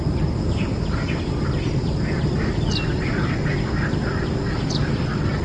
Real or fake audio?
real